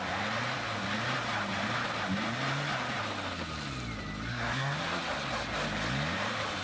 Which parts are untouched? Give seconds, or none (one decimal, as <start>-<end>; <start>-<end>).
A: 0.0-4.3; 5.0-6.6